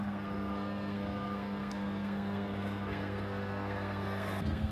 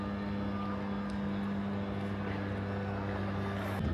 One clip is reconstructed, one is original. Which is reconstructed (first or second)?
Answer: first